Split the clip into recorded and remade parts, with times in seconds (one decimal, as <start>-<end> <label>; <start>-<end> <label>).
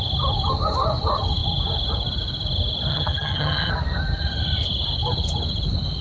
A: 0.0-2.9 recorded; 2.9-3.7 remade; 3.7-6.0 recorded